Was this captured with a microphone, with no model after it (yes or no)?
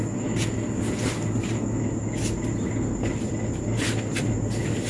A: yes